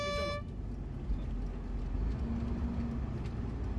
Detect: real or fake real